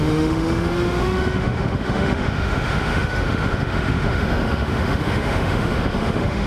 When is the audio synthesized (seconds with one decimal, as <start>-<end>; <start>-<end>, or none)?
0.0-6.5